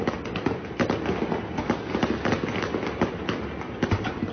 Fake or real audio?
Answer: real